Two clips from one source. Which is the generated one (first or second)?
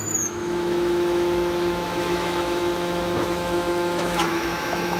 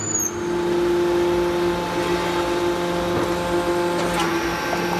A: first